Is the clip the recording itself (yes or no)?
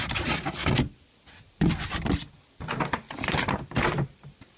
yes